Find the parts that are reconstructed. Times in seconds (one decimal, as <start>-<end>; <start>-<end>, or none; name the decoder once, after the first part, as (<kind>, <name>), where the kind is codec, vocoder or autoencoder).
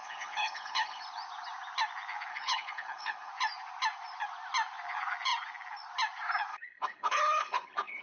0.0-1.0 (codec, HILCodec); 2.3-3.3; 6.5-8.0